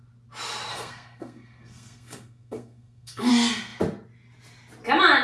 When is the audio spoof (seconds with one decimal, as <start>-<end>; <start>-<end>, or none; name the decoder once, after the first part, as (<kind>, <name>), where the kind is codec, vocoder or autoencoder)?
0.7-3.3 (codec, SNAC)